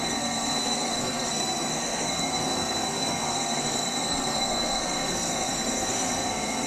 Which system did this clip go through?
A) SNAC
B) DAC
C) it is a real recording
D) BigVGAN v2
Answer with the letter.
A